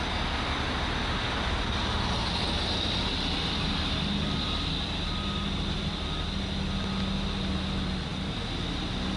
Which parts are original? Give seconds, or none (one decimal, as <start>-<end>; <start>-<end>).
0.0-9.2